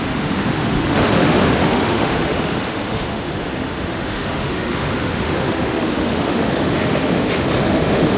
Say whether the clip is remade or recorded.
remade